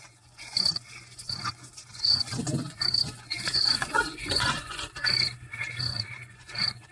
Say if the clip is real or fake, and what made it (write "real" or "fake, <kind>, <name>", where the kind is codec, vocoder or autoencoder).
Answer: fake, vocoder, Vocos